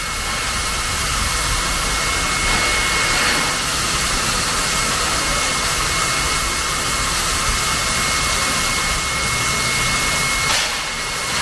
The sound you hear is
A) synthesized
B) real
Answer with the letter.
B